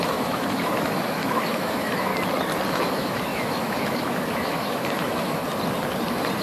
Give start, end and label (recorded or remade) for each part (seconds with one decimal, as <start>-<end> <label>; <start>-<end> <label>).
0.0-2.1 remade; 2.1-2.7 recorded; 2.7-5.4 remade; 5.4-6.4 recorded